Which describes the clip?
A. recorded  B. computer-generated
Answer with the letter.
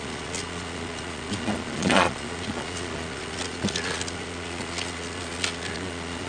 B